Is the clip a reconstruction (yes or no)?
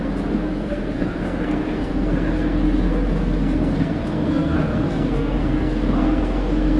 yes